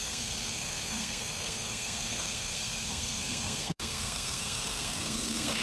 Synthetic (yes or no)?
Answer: yes